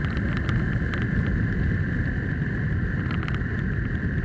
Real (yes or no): yes